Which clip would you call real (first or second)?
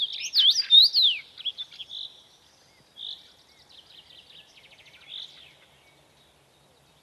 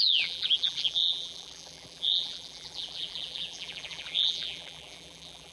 first